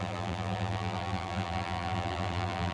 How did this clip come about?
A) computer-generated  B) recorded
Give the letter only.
A